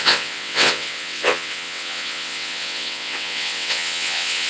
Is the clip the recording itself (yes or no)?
no